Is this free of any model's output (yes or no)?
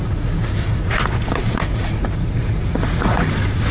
no